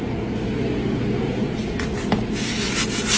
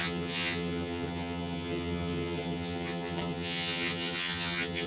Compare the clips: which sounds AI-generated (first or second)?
second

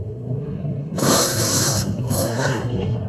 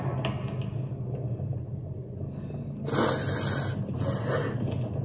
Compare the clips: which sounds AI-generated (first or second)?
first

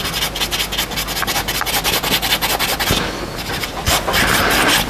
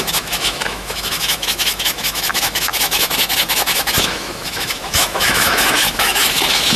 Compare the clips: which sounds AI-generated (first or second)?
second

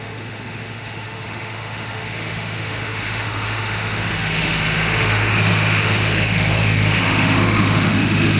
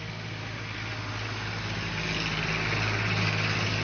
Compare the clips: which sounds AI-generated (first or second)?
first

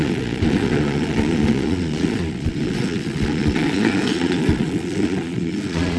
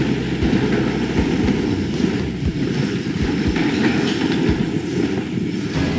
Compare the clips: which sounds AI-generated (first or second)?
first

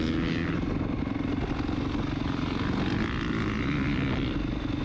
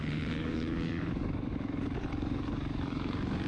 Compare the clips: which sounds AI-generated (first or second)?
second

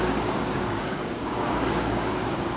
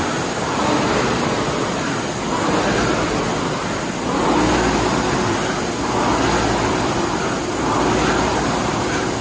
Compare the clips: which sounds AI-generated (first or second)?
first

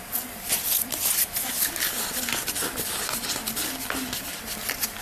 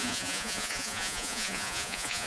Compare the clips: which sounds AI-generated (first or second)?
second